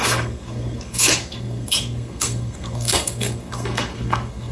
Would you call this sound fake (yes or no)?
yes